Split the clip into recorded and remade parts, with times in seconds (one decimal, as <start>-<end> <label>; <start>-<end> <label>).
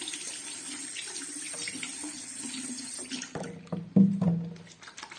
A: 0.0-2.0 recorded; 2.0-2.9 remade; 2.9-5.2 recorded